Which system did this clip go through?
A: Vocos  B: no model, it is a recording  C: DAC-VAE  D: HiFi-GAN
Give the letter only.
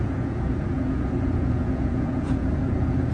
A